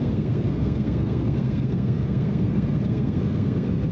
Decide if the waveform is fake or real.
fake